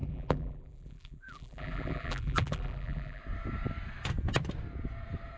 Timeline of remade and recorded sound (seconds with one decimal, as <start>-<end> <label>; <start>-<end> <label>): 0.0-3.2 remade; 3.2-5.4 recorded